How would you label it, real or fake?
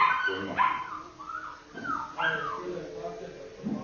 real